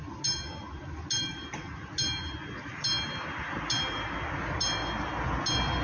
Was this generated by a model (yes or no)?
no